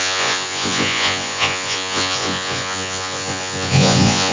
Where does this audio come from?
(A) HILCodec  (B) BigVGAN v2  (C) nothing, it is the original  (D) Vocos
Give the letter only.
D